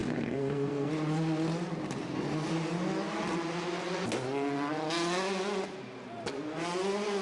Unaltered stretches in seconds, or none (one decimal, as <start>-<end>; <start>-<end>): 0.9-7.2